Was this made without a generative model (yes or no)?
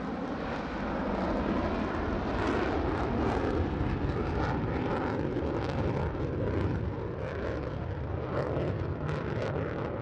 yes